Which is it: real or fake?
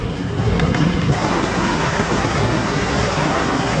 fake